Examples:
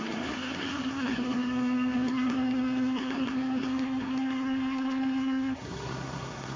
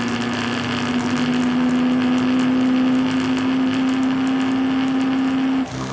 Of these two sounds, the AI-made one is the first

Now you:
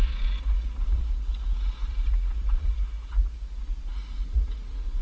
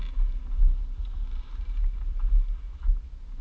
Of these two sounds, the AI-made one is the first